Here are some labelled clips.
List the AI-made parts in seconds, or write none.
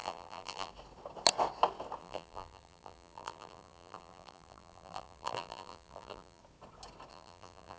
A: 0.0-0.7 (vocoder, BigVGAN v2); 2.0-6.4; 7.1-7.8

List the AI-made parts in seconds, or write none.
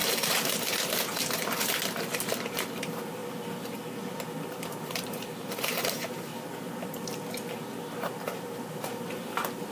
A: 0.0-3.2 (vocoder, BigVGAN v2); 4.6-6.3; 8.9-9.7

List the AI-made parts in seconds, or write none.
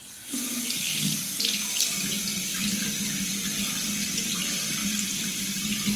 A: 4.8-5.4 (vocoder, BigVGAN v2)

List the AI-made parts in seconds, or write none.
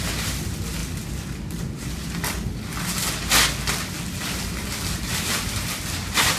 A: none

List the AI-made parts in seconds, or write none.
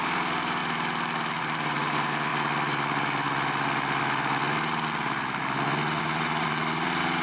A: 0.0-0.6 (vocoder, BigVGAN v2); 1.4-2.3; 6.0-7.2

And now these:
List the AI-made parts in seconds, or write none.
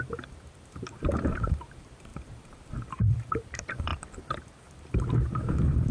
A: 0.0-5.9 (vocoder, BigVGAN v2)